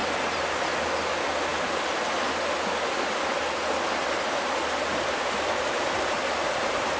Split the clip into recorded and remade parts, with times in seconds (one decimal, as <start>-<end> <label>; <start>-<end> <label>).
0.0-7.0 recorded